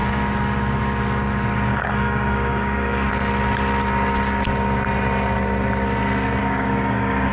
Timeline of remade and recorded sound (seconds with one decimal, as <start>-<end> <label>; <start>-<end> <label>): 0.0-1.7 recorded; 1.7-3.1 remade; 3.1-6.4 recorded; 6.4-7.3 remade